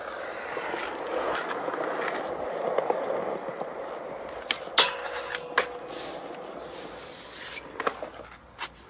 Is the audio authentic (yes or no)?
yes